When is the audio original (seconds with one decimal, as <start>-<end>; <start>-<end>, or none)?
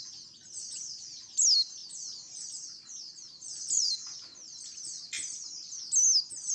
0.0-1.8; 5.7-6.5